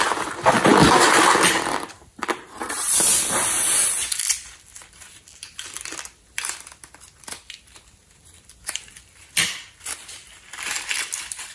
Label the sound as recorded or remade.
remade